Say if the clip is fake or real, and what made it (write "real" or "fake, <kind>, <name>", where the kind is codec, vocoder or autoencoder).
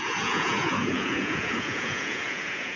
fake, vocoder, Vocos